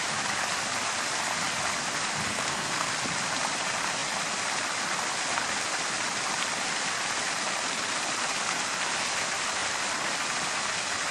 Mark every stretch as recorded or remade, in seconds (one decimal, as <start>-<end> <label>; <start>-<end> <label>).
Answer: 0.0-2.3 recorded; 2.3-2.9 remade; 2.9-11.1 recorded